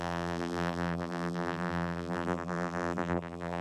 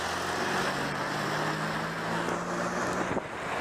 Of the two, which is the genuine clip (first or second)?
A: second